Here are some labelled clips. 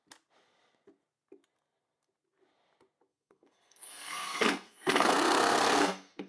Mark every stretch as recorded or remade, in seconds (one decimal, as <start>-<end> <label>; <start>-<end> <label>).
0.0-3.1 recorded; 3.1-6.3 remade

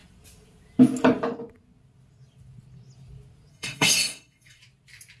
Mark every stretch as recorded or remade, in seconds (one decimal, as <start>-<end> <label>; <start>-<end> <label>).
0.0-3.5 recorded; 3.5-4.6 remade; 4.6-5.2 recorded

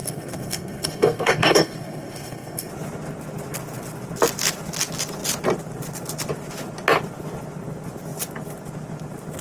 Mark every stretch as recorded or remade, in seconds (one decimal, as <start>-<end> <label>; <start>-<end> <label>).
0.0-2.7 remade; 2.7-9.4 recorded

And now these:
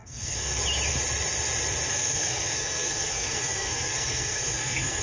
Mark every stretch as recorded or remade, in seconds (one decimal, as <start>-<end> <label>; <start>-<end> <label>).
0.0-0.6 remade; 0.6-1.9 recorded; 1.9-5.0 remade

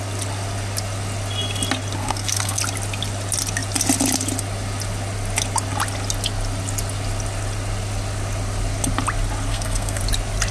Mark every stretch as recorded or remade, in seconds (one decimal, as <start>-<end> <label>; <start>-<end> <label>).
0.0-2.0 recorded; 2.0-2.6 remade; 2.6-9.5 recorded; 9.5-10.0 remade; 10.0-10.5 recorded

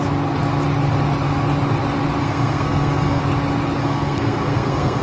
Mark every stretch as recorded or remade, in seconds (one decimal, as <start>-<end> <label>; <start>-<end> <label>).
0.0-2.2 recorded; 2.2-3.2 remade; 3.2-3.8 recorded; 3.8-5.0 remade